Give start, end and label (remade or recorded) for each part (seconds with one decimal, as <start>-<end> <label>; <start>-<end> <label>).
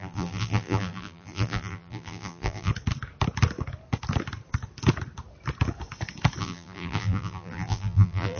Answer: 0.0-2.7 remade; 2.7-6.4 recorded; 6.4-8.4 remade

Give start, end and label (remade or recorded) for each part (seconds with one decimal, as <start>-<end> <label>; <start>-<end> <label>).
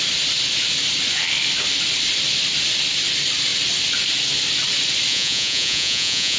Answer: 0.0-5.1 recorded; 5.1-6.4 remade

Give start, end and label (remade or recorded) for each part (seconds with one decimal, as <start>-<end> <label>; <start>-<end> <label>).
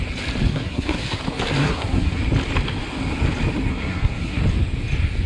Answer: 0.0-0.5 recorded; 0.5-1.2 remade; 1.2-1.6 recorded; 1.6-2.2 remade; 2.2-3.7 recorded; 3.7-4.4 remade; 4.4-5.3 recorded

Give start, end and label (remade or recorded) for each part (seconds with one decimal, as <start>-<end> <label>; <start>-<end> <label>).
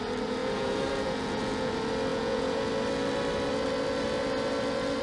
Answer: 0.0-0.4 recorded; 0.4-1.7 remade; 1.7-2.1 recorded; 2.1-2.7 remade; 2.7-5.0 recorded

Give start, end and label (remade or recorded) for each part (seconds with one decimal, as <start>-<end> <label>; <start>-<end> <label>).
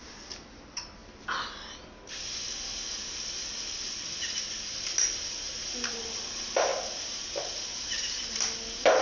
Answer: 0.0-9.0 recorded